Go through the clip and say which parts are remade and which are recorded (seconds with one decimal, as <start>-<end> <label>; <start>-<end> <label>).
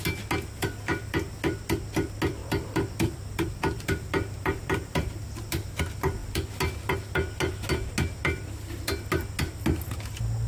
0.0-2.4 recorded; 2.4-5.8 remade; 5.8-10.5 recorded